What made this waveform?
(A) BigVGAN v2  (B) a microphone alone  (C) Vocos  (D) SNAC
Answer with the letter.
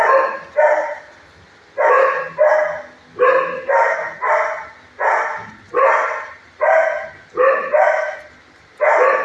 B